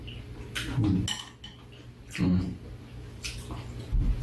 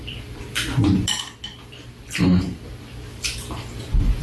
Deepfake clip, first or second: second